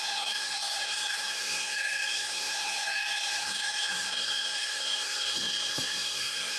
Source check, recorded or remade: remade